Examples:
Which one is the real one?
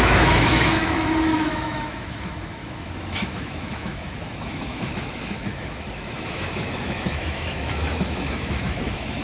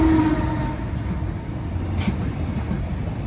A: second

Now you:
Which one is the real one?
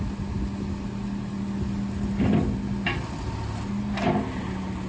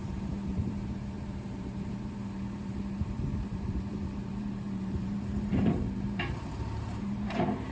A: first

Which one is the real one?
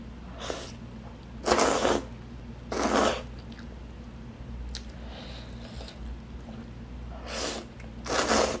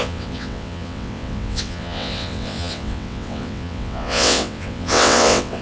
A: first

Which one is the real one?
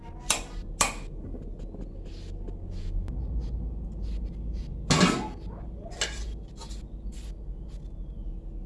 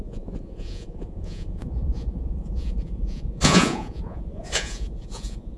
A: first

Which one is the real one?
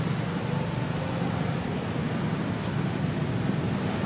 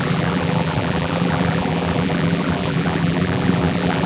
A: first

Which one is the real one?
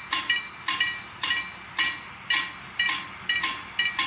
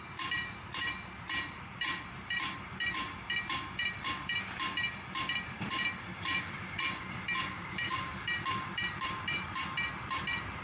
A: first